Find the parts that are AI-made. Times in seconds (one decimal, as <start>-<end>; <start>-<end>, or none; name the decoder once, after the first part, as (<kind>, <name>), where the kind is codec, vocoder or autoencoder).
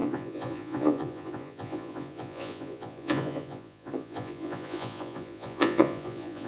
0.0-6.5 (vocoder, Vocos)